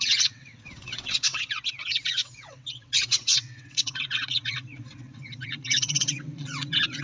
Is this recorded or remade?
remade